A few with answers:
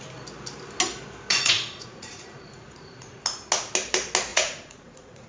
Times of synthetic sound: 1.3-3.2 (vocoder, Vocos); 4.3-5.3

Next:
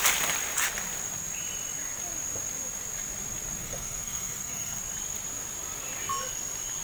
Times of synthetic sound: 3.6-4.8 (codec, SNAC)

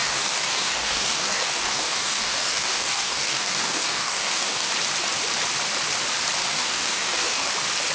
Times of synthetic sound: 0.0-4.7 (codec, DAC); 6.5-7.5

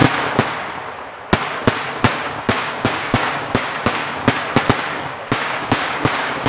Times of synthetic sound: 2.3-4.0 (codec, DAC); 5.0-6.5